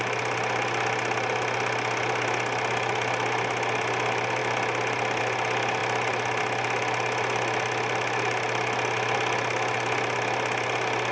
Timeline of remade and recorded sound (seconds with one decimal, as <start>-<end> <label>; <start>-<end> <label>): 0.0-11.1 recorded